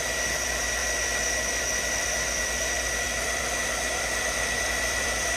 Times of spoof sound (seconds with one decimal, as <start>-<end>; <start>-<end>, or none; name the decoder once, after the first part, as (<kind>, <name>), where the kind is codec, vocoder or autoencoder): 0.0-0.8 (vocoder, BigVGAN v2); 1.6-5.4